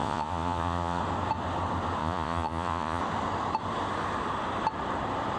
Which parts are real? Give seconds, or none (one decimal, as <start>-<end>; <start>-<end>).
1.0-2.0; 3.0-5.4